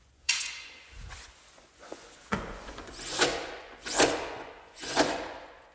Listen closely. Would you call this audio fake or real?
fake